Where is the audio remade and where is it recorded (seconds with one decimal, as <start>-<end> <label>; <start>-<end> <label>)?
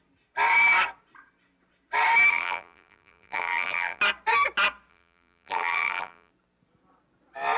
0.0-2.3 recorded; 2.3-4.0 remade; 4.0-4.9 recorded; 4.9-6.3 remade; 6.3-7.6 recorded